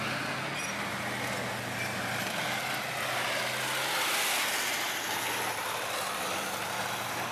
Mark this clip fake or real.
real